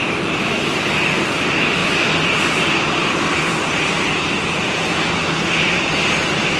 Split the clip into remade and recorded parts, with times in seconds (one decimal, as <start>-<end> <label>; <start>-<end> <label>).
0.0-1.8 remade; 1.8-5.8 recorded; 5.8-6.6 remade